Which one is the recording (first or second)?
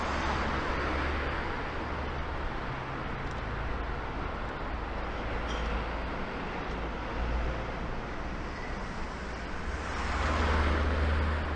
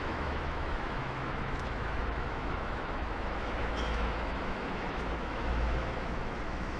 first